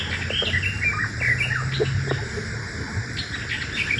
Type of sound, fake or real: real